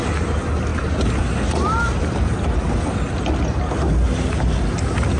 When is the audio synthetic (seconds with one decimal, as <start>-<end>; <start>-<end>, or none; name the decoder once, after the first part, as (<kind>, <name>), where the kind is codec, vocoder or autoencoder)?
none